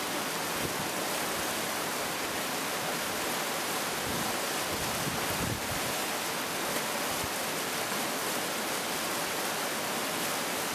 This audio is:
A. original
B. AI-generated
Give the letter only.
A